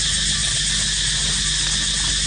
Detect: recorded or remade recorded